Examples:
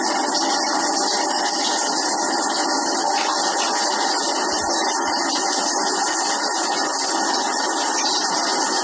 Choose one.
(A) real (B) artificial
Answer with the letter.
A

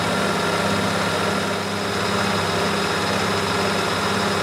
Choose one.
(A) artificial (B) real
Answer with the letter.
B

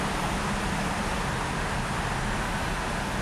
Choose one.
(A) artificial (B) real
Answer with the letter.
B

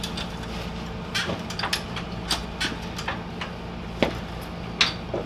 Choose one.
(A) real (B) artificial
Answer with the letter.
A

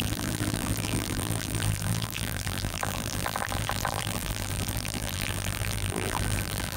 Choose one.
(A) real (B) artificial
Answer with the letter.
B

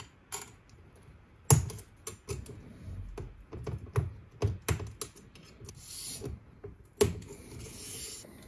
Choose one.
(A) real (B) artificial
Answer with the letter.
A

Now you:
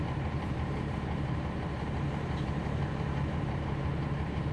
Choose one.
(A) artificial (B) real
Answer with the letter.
A